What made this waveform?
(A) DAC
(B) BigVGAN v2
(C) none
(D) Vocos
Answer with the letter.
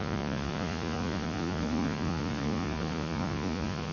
D